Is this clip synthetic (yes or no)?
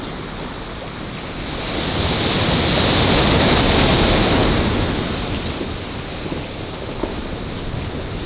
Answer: no